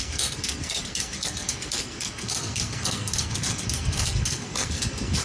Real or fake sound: fake